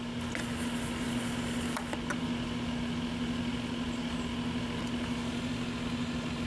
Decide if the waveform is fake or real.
real